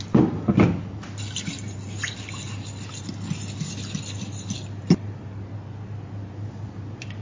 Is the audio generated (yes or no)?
no